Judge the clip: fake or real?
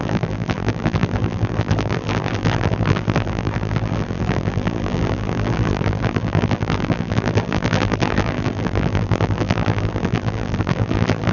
fake